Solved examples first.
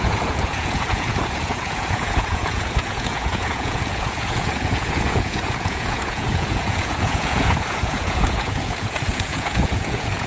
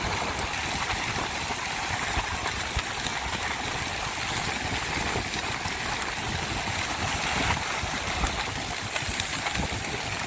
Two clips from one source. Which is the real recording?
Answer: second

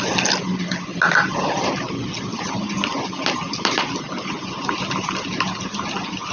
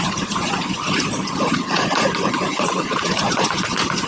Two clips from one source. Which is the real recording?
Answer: first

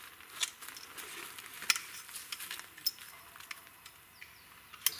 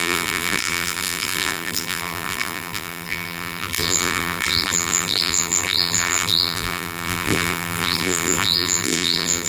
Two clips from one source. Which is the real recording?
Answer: first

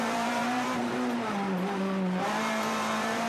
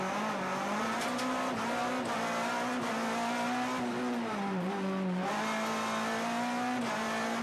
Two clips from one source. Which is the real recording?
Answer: second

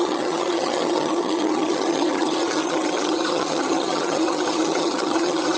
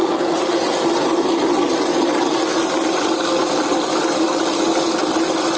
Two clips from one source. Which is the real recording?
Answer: second